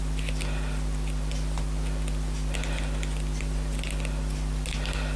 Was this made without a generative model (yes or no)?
yes